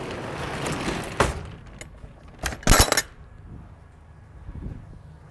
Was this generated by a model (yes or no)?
no